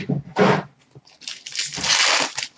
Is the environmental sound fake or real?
real